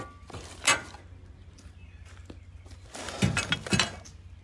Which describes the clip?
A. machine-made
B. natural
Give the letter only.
B